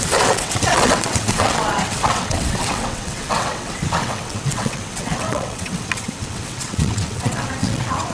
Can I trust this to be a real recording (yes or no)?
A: no